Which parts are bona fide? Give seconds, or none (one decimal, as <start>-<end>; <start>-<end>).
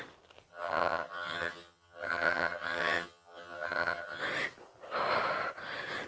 0.0-0.5; 4.2-6.1